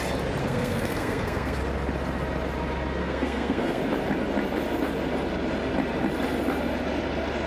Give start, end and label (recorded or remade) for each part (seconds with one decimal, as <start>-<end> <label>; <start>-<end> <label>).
0.0-0.4 recorded; 0.4-1.6 remade; 1.6-3.0 recorded; 3.0-3.8 remade; 3.8-7.5 recorded